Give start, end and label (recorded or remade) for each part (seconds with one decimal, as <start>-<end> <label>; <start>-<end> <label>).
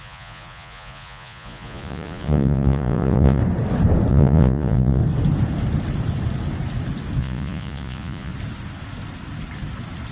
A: 0.0-3.4 remade; 3.4-4.1 recorded; 4.1-5.0 remade; 5.0-7.2 recorded; 7.2-8.3 remade; 8.3-10.1 recorded